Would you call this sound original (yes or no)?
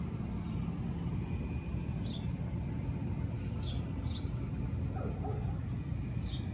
yes